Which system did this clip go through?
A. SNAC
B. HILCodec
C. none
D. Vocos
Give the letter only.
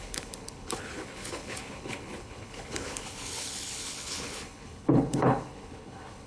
B